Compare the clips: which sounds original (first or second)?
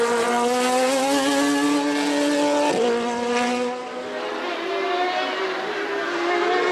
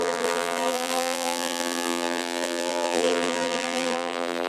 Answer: first